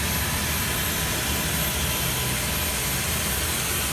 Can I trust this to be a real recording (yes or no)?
yes